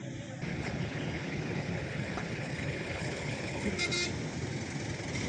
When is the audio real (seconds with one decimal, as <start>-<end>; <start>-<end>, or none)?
0.0-0.5; 3.7-5.3